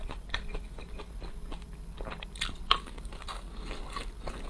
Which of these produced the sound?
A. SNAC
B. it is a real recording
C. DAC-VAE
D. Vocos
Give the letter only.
B